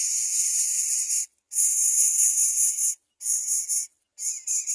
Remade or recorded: recorded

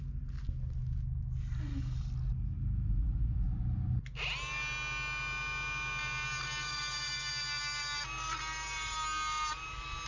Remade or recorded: recorded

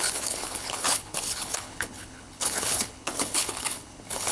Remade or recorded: remade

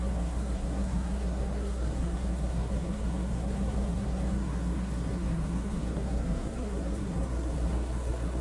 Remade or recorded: remade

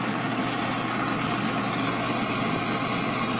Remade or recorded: recorded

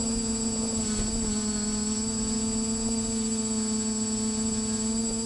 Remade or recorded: recorded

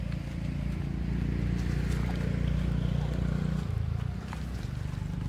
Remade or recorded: recorded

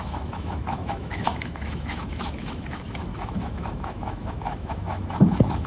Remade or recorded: remade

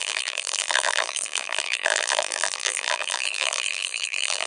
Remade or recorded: remade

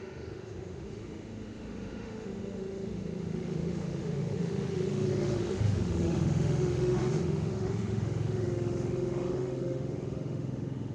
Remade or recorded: remade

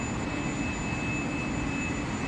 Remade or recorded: recorded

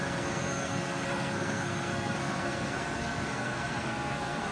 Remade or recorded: remade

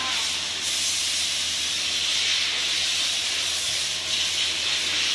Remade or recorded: recorded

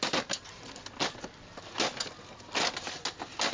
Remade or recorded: recorded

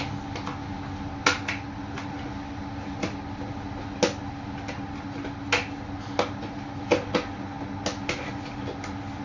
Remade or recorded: recorded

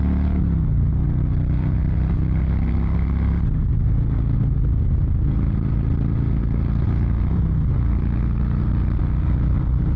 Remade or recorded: recorded